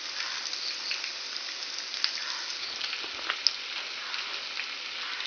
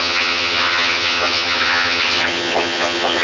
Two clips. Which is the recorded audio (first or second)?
first